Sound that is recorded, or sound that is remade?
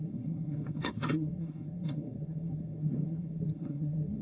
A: remade